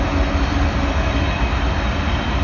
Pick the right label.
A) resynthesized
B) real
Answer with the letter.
B